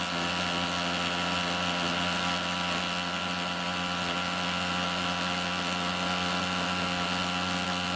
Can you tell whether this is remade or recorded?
recorded